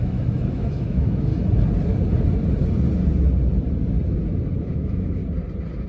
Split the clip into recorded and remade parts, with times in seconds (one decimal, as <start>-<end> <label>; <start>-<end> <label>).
0.0-1.3 remade; 1.3-4.6 recorded; 4.6-5.2 remade; 5.2-5.9 recorded

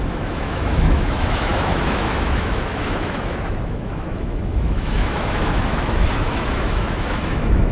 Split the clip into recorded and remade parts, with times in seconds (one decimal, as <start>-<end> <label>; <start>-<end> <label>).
0.0-7.7 remade